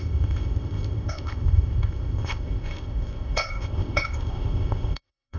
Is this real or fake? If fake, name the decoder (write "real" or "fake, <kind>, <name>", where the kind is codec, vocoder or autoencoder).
fake, codec, ZipCodec